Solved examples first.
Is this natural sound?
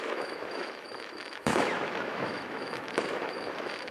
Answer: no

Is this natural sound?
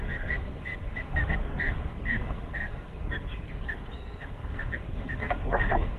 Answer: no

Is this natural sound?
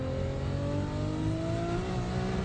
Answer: yes